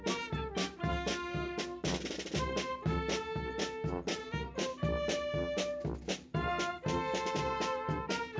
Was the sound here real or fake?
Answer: real